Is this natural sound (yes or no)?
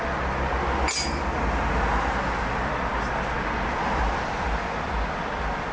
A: yes